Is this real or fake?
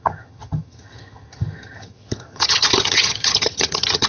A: fake